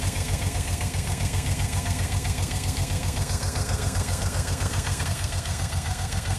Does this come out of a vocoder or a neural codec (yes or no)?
yes